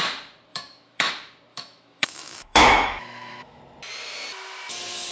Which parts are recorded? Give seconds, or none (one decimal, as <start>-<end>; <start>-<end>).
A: 0.0-0.5; 1.1-1.5; 3.6-5.1